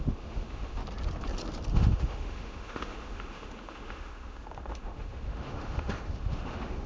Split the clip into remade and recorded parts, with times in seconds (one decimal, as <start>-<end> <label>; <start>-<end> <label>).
0.0-0.8 remade; 0.8-1.7 recorded; 1.7-6.9 remade